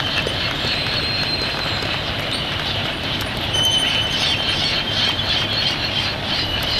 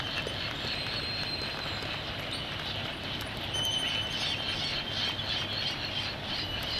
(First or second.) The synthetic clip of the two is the first